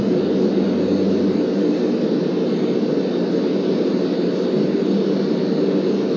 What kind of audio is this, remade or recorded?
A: recorded